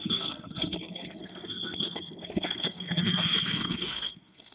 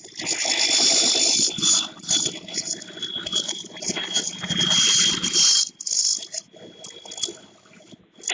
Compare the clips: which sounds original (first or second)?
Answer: second